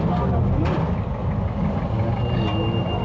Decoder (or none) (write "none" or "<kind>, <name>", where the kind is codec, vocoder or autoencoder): none